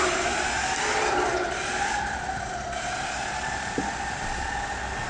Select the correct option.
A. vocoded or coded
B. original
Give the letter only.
B